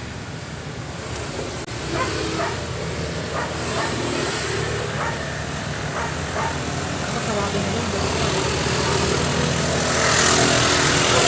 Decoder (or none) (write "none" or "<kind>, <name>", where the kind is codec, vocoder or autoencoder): none